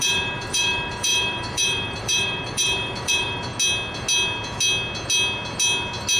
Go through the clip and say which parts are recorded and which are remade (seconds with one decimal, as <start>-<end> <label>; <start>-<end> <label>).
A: 0.0-3.5 remade; 3.5-6.2 recorded